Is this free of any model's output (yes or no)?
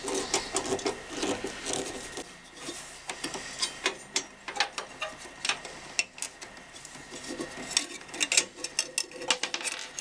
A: yes